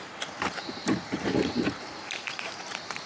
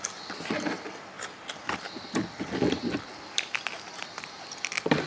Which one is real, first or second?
second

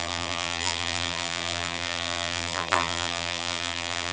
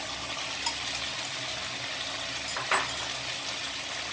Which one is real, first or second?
second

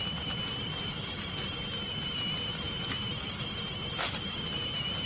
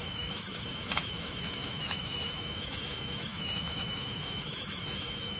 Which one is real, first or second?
first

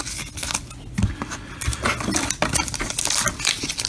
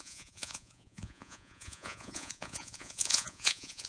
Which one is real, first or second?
first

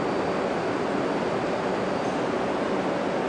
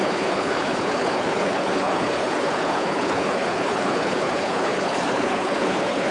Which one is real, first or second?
first